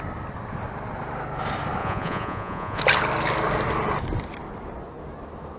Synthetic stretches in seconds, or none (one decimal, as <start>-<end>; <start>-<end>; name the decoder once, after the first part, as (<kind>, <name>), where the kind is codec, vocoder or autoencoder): 1.8-2.8 (vocoder, Vocos)